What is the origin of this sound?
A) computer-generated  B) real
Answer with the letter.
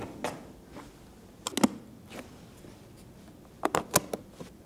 B